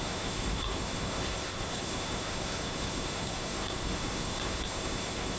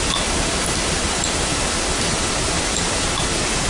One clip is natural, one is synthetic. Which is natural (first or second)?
second